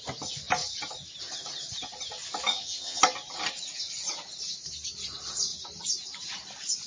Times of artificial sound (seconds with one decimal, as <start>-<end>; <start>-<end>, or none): 2.5-3.0